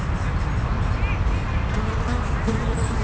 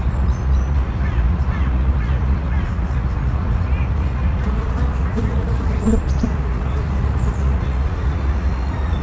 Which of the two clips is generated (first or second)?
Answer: second